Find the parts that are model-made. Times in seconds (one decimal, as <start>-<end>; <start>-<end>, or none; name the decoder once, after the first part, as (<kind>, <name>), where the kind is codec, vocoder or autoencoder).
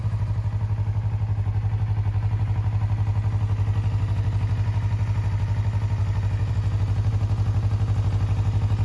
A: 6.0-7.1 (vocoder, BigVGAN v2)